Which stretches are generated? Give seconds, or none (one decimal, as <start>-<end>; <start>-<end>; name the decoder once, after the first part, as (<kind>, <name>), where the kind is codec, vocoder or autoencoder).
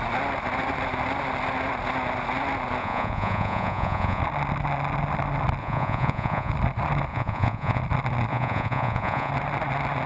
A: 2.8-4.2 (vocoder, Vocos); 5.6-6.5; 7.1-7.8; 8.3-9.3